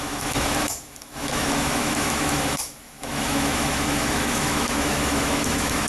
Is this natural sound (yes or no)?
no